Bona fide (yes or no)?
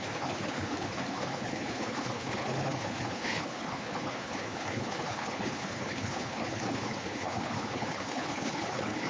no